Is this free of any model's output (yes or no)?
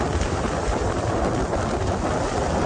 yes